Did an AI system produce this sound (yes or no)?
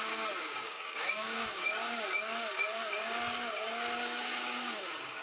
yes